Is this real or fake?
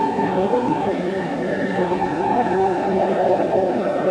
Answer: fake